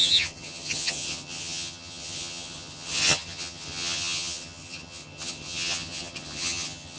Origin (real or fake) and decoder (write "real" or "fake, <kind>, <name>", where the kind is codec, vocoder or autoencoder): fake, vocoder, HiFi-GAN